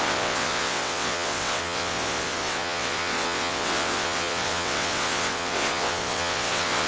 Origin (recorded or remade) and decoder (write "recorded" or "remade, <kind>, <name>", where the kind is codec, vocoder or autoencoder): remade, vocoder, WaveNeXt